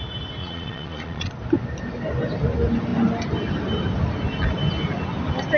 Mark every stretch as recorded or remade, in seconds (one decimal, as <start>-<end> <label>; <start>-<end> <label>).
0.0-0.4 recorded; 0.4-1.3 remade; 1.3-5.6 recorded